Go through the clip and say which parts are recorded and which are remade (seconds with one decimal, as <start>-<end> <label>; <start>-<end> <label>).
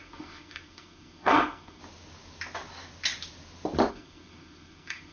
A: 0.0-1.8 remade; 1.8-3.9 recorded; 3.9-5.1 remade